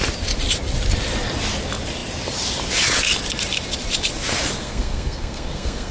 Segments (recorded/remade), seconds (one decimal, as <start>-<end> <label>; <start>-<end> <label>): 0.0-4.6 recorded; 4.6-5.9 remade